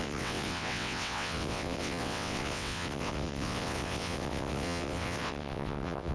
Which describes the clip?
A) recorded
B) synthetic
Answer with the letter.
B